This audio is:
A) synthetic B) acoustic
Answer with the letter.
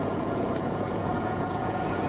A